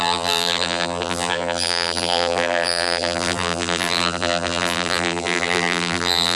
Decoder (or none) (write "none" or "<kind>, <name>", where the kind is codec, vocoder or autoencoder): vocoder, BigVGAN v2